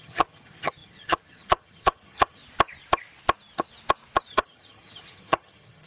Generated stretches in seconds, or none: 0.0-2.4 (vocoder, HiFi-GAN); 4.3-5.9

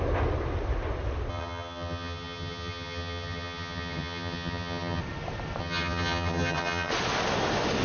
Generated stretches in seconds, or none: 1.3-5.0 (vocoder, HiFi-GAN); 5.6-6.9